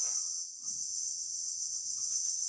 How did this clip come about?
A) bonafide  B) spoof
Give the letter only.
B